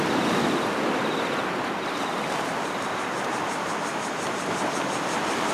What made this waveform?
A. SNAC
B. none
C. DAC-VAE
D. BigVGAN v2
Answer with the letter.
B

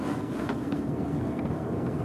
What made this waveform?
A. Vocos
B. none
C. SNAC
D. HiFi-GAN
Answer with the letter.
C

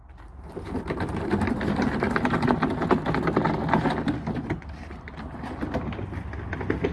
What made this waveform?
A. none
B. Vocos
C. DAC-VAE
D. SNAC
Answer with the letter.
A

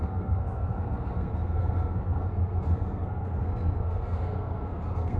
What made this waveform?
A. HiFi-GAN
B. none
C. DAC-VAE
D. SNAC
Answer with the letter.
D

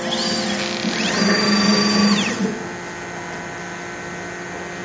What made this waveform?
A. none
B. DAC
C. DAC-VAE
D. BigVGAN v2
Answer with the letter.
A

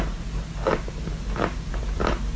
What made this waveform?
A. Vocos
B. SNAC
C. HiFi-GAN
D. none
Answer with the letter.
D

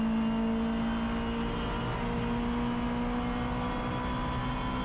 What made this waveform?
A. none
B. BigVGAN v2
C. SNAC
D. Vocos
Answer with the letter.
A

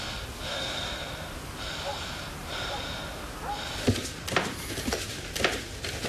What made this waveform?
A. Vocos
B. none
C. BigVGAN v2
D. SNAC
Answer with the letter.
B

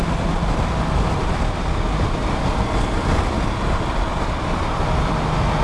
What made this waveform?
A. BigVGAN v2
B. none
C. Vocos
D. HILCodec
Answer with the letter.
B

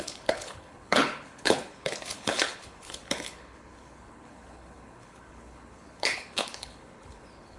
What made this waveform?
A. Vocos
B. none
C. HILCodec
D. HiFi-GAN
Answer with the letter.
C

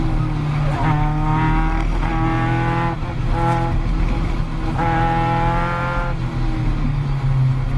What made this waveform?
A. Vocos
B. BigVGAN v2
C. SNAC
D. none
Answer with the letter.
D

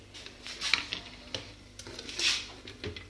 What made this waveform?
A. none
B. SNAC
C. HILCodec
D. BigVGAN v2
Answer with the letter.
A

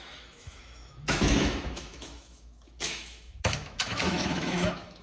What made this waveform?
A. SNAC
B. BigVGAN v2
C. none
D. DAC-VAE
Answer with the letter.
D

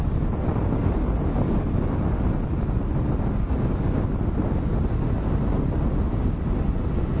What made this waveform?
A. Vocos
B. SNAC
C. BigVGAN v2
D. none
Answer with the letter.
D